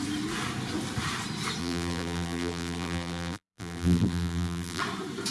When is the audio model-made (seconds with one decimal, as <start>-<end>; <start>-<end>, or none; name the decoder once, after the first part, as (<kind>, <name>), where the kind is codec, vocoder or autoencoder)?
1.6-4.8 (vocoder, BigVGAN v2)